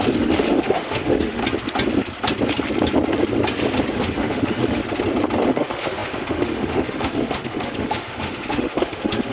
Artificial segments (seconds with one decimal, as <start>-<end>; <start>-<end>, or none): 0.0-1.4; 3.9-4.8; 5.4-9.3

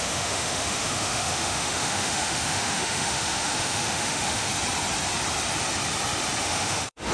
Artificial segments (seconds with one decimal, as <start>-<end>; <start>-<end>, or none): 0.0-4.5; 6.4-7.1

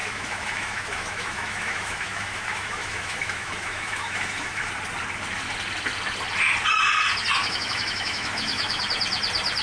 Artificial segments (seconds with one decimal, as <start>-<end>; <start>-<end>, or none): 0.0-4.7; 7.4-8.8

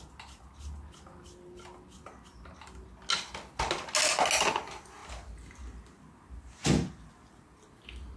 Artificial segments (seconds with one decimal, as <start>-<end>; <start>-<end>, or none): none

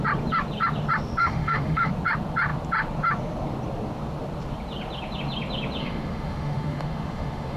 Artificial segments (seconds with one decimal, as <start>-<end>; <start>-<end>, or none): 1.2-1.9; 5.8-7.6

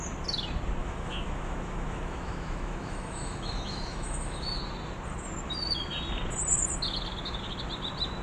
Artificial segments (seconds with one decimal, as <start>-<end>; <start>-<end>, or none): 0.8-4.6

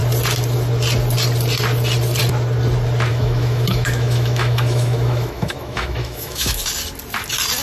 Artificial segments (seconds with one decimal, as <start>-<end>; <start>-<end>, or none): 3.1-6.6